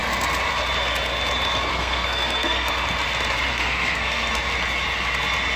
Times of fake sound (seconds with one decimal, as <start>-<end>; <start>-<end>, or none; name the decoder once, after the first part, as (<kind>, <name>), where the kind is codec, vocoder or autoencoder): 1.7-2.7 (codec, SNAC); 3.5-4.3